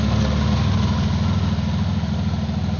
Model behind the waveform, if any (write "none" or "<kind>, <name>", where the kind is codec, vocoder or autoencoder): none